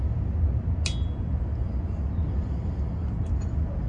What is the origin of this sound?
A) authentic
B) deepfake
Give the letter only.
A